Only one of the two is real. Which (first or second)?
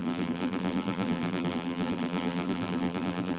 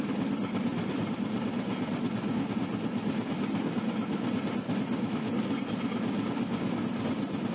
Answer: second